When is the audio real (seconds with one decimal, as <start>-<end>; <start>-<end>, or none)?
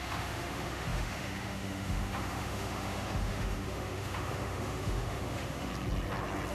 5.7-6.5